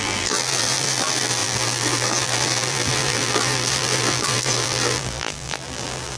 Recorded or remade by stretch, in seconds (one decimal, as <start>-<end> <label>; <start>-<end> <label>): 0.0-6.2 remade

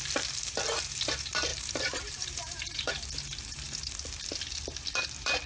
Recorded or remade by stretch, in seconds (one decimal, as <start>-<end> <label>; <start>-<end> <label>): 0.0-1.5 recorded; 1.5-2.9 remade; 2.9-5.5 recorded

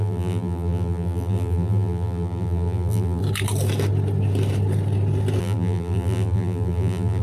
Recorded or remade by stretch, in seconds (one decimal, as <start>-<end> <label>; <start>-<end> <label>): 0.0-3.2 remade; 3.2-5.4 recorded; 5.4-7.2 remade

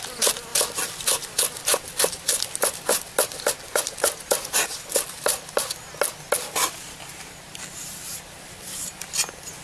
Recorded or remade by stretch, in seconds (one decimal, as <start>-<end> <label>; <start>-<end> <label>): 0.0-9.6 recorded

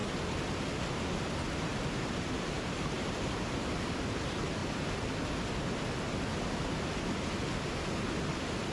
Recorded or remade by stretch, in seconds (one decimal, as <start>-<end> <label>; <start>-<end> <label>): 0.0-1.7 recorded; 1.7-3.7 remade; 3.7-4.6 recorded; 4.6-5.1 remade; 5.1-8.7 recorded

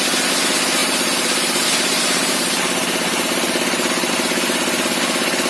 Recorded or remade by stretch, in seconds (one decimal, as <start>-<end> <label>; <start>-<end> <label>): 0.0-0.8 recorded; 0.8-4.1 remade; 4.1-5.5 recorded

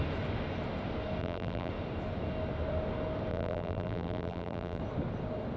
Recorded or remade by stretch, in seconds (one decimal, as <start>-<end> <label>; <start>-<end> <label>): 0.0-1.2 recorded; 1.2-1.7 remade; 1.7-3.3 recorded; 3.3-4.8 remade; 4.8-5.6 recorded